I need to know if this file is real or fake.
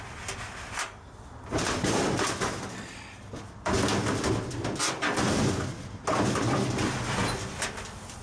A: real